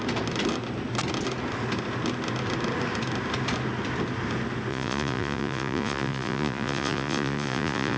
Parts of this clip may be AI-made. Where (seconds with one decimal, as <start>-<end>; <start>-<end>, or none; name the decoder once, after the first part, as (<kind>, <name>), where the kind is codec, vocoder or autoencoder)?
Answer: 4.7-8.0 (vocoder, Vocos)

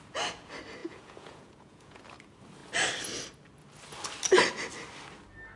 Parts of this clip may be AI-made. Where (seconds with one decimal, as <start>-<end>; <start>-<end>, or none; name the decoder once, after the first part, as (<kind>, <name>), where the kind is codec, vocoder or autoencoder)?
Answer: 0.8-2.0 (vocoder, Vocos)